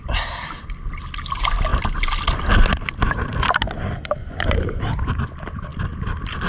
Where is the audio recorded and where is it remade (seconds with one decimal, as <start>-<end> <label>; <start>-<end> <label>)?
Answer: 0.0-4.2 recorded; 4.2-4.8 remade; 4.8-6.5 recorded